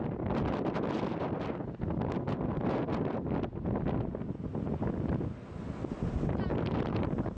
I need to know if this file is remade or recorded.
recorded